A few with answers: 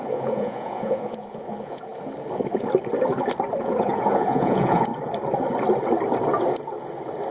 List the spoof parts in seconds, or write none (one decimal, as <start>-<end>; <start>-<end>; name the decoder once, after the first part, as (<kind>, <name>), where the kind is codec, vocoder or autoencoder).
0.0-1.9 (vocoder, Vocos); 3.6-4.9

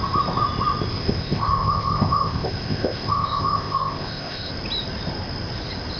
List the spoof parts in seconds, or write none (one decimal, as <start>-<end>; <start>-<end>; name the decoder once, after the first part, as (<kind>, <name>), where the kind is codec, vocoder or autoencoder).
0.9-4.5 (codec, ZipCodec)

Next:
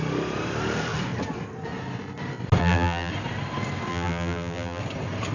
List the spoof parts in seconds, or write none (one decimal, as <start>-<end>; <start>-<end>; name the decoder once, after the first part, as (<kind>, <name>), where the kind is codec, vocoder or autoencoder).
2.6-3.1 (vocoder, BigVGAN v2); 3.9-4.8

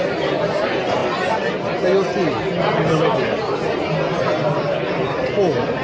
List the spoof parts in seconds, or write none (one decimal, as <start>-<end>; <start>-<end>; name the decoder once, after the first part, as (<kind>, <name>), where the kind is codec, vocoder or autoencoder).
none

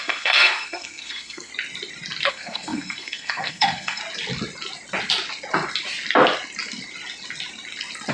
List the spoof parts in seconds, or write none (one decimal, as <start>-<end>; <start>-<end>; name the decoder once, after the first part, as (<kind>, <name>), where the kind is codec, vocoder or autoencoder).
0.0-1.5 (codec, SNAC); 2.3-4.0